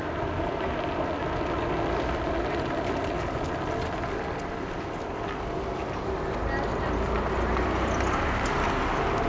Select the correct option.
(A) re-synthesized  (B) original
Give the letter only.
B